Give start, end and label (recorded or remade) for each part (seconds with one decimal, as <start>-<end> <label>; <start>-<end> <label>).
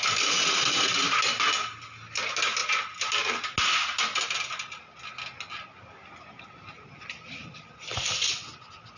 0.0-9.0 recorded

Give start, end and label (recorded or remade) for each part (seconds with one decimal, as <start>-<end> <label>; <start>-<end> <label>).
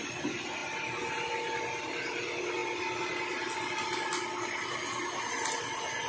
0.0-6.1 recorded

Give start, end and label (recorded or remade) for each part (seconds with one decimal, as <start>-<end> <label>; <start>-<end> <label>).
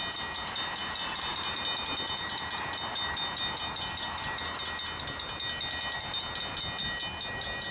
0.0-1.3 recorded; 1.3-4.6 remade; 4.6-7.7 recorded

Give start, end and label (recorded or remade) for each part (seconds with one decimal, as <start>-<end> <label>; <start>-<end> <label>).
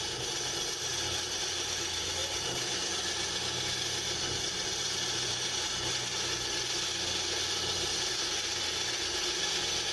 0.0-2.2 recorded; 2.2-5.3 remade; 5.3-9.9 recorded